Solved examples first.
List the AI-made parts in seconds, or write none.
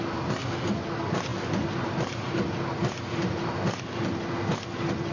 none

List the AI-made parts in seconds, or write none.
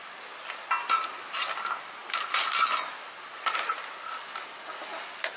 none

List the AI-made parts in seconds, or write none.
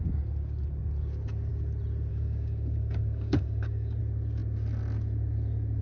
2.1-4.0 (codec, DAC)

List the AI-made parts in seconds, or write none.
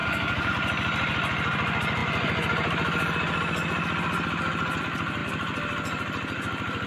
0.0-0.5 (codec, DAC)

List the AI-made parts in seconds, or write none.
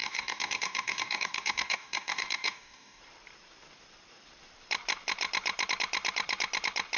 0.0-3.0 (codec, DAC)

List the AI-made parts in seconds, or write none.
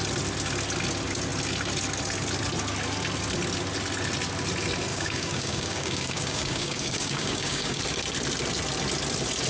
4.9-7.8 (codec, DAC)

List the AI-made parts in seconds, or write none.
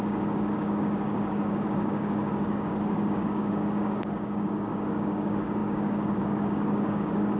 0.0-7.4 (codec, DAC)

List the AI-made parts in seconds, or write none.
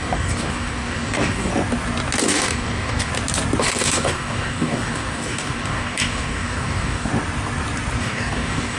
0.0-1.5 (codec, DAC); 2.2-3.1; 3.6-7.1; 8.0-8.8